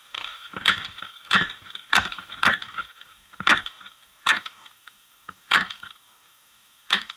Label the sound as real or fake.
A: fake